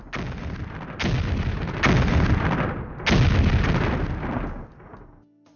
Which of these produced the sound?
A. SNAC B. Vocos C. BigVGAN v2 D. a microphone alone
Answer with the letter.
D